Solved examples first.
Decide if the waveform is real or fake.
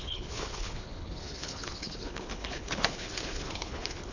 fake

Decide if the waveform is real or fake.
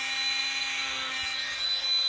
real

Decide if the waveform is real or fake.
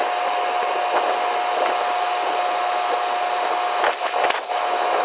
real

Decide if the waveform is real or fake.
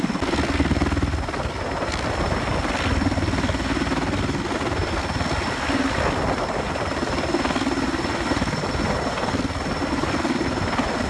real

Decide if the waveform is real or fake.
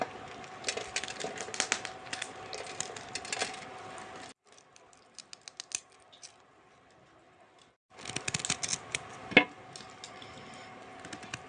real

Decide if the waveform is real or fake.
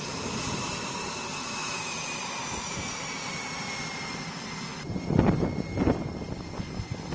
real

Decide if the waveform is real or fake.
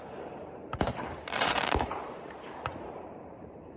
fake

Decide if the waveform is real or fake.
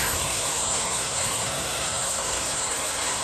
fake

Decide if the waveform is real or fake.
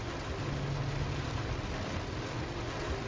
real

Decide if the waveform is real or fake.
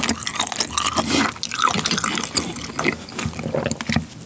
real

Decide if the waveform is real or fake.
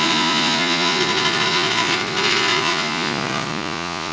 fake